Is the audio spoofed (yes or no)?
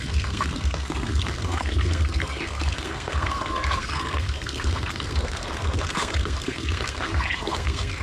yes